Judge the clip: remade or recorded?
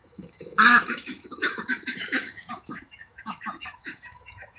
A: remade